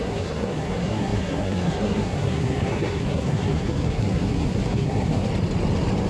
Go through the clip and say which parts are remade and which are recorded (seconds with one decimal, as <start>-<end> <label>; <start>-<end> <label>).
0.0-5.3 remade; 5.3-6.1 recorded